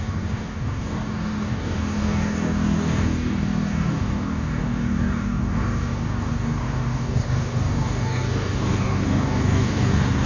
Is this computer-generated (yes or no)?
yes